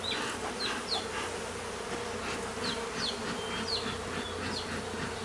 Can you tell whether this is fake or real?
real